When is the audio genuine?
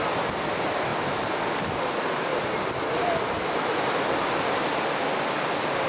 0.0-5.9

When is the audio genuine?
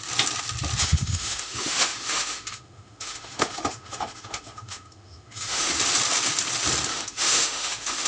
0.0-0.8; 5.7-6.9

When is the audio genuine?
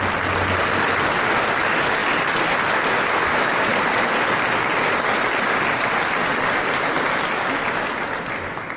0.0-8.8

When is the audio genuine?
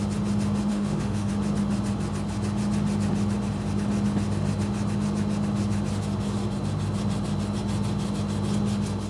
0.0-0.7; 1.3-9.1